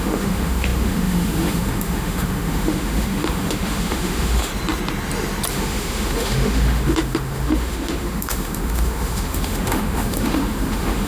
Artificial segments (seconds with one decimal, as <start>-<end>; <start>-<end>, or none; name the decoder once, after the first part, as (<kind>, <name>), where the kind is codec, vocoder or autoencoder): 0.0-4.5 (autoencoder, DAC-VAE); 5.5-11.1